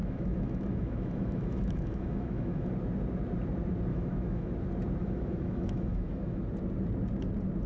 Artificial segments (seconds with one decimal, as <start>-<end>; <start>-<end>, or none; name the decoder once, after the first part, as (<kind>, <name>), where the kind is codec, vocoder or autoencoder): 0.0-2.7 (autoencoder, DAC-VAE); 3.9-4.5; 5.0-6.4